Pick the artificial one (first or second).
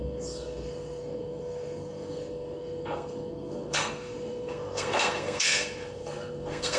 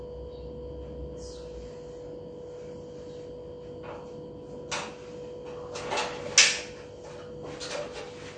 first